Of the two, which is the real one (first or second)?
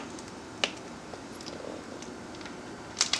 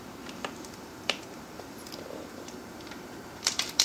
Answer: first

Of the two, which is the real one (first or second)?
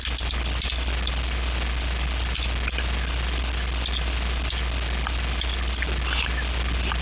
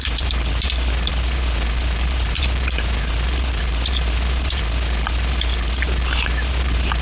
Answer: first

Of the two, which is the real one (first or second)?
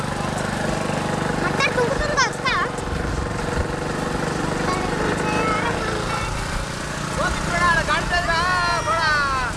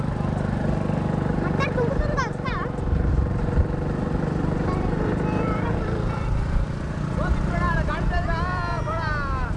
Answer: first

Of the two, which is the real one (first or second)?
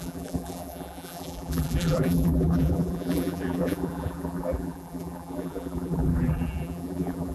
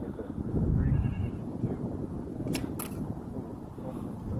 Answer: second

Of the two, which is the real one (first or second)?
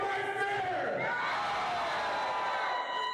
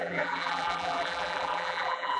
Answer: first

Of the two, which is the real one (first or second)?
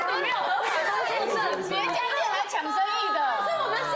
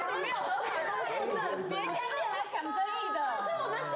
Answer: first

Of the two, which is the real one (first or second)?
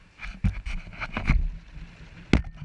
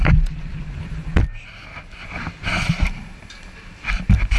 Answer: first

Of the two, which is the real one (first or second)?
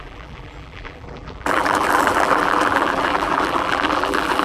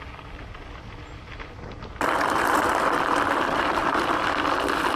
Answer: second